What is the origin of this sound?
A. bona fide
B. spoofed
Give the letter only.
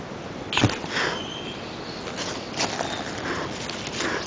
A